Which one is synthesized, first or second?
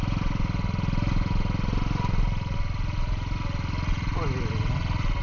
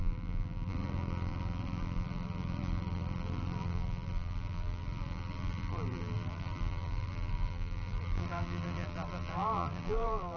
second